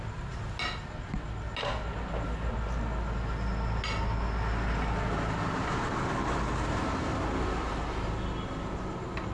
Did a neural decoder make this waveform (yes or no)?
no